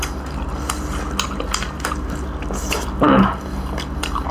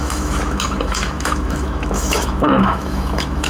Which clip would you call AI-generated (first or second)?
second